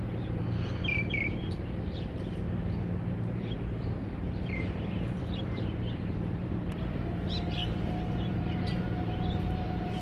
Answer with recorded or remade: remade